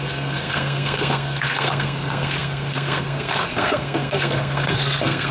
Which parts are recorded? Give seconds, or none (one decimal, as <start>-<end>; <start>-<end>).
none

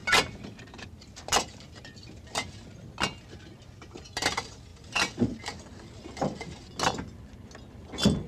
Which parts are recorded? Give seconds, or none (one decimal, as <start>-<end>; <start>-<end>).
2.5-8.3

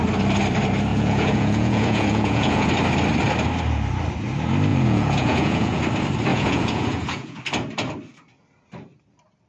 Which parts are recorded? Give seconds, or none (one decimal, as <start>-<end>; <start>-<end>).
0.0-0.9; 2.7-4.7; 5.8-6.3; 7.4-9.5

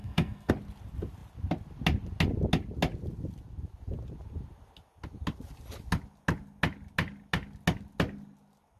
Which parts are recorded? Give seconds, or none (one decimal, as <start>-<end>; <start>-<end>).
0.5-8.8

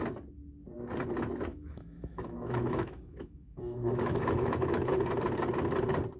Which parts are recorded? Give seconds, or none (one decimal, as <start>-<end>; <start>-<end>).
0.0-1.5; 5.2-6.2

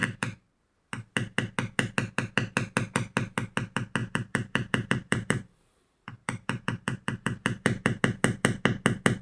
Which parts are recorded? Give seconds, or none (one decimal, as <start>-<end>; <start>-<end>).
0.6-4.0; 8.0-9.2

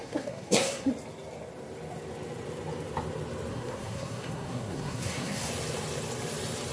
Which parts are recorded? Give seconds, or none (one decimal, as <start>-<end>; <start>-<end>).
0.9-3.5; 5.5-6.7